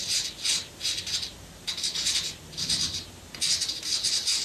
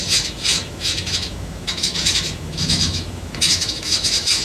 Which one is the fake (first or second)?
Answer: second